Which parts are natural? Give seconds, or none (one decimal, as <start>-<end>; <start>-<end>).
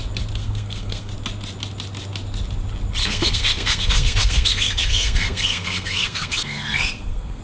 0.0-0.4; 1.1-3.0